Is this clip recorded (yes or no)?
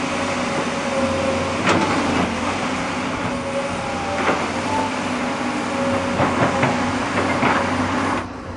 yes